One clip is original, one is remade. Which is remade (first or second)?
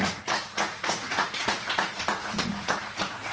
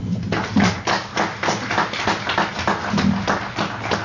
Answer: first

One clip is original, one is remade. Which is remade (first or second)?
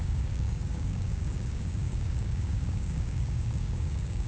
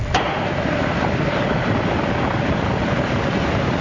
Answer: first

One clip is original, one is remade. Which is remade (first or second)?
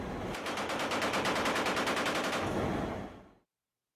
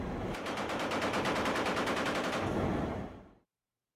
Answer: second